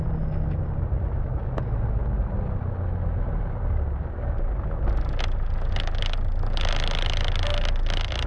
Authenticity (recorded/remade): recorded